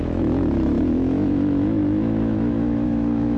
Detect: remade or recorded remade